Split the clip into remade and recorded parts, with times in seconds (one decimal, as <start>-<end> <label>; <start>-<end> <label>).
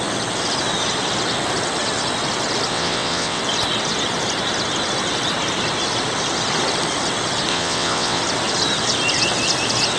0.0-2.7 recorded; 2.7-3.4 remade; 3.4-7.5 recorded; 7.5-8.2 remade; 8.2-10.0 recorded